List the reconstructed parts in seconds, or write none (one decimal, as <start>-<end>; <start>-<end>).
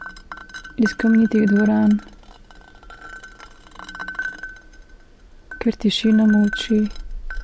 none